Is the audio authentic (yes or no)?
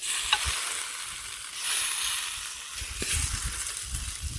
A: yes